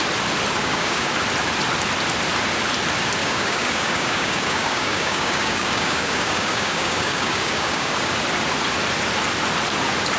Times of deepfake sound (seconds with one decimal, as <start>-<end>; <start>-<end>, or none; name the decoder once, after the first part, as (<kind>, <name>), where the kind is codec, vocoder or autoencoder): 0.6-1.1 (codec, DAC); 3.2-8.1